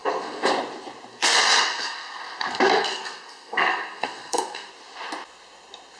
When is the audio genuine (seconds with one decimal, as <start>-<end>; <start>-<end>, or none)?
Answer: 0.5-1.1; 4.7-6.0